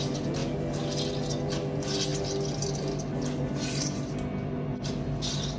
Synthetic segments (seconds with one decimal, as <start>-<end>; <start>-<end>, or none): none